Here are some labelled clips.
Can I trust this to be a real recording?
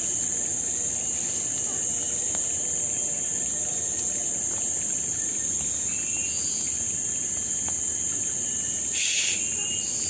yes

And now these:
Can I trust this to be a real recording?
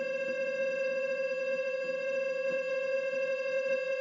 no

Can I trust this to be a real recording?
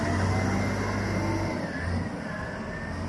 yes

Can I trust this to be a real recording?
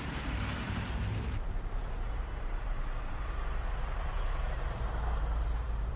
no